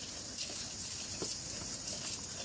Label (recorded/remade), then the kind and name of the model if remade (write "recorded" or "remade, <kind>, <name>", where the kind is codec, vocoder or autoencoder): recorded